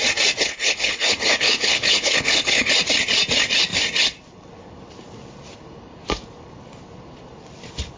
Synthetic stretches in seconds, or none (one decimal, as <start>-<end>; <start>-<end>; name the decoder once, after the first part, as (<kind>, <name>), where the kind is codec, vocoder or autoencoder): 0.4-2.7 (codec, HILCodec)